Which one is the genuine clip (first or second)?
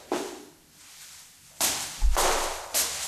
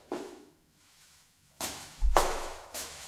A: first